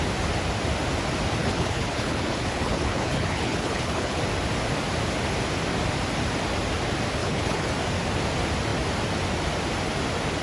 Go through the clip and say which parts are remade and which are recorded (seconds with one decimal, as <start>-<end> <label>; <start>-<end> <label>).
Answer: 0.0-1.4 recorded; 1.4-4.2 remade; 4.2-7.2 recorded; 7.2-7.7 remade; 7.7-10.4 recorded